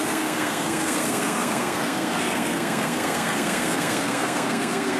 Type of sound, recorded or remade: remade